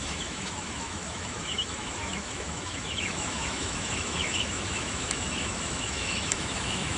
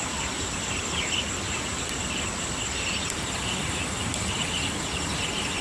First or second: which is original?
second